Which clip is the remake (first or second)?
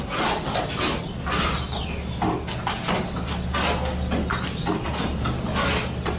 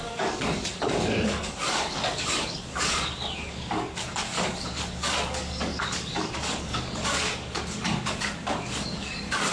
second